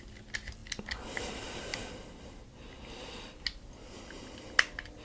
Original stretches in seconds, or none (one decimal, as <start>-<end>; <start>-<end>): 0.0-5.0